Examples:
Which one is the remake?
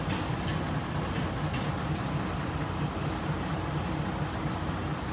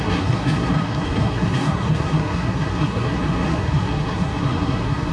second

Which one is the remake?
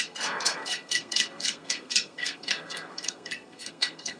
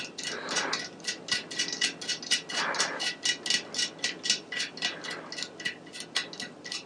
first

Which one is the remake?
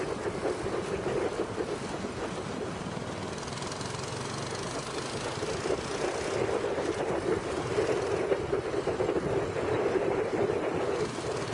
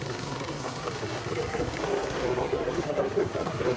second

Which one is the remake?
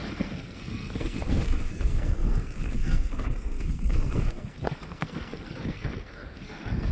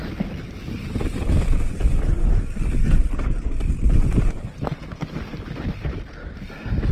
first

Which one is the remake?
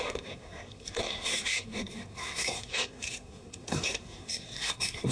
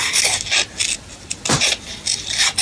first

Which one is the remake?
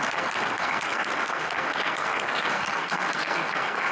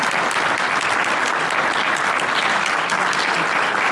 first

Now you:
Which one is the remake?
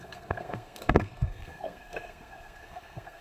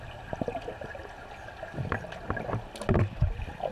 first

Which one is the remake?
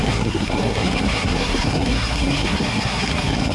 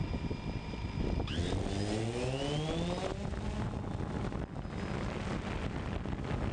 first